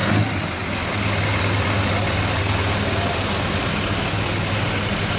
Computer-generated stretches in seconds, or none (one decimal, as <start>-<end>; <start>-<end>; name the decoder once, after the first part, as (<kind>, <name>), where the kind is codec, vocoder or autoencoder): none